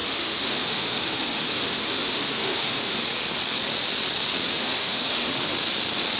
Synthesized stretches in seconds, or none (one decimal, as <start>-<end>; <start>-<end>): 0.0-3.0; 4.5-5.3